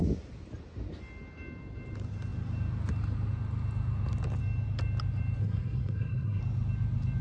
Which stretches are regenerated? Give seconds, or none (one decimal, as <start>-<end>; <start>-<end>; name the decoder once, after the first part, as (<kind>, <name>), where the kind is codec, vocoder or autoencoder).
5.4-6.4 (codec, SNAC)